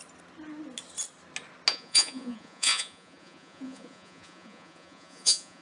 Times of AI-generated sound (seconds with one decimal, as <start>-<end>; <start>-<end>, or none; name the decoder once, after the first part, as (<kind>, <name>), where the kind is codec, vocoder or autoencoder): 1.7-5.6 (vocoder, Vocos)